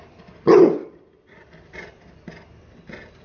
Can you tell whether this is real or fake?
real